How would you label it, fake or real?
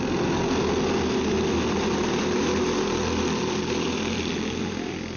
real